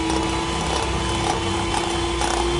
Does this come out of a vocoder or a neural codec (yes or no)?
no